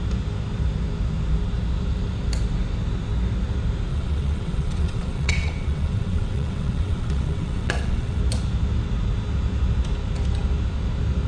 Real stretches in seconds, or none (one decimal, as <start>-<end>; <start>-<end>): 0.0-3.9; 8.2-11.3